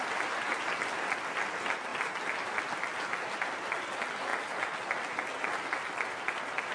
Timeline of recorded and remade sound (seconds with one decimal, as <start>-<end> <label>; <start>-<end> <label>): 0.0-6.7 recorded